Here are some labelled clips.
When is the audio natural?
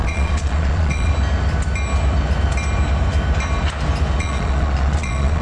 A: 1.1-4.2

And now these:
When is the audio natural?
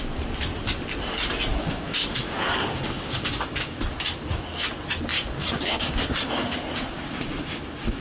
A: 0.0-1.5; 3.8-5.1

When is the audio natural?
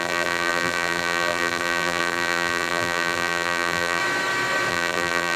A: 4.0-4.7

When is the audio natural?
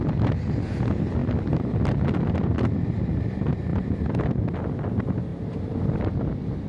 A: 0.0-6.7